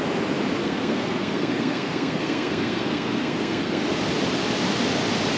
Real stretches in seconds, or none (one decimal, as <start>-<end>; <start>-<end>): 0.0-0.6; 3.8-5.4